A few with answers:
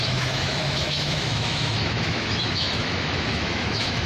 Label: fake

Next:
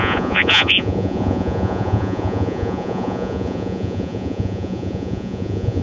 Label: fake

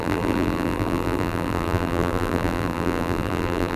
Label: fake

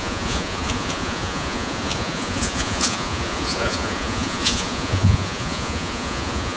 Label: fake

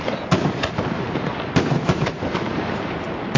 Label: real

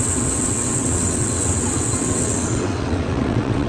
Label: fake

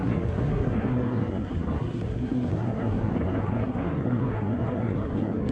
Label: fake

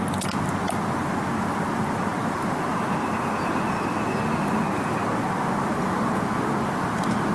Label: real